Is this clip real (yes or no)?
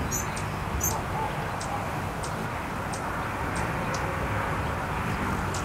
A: yes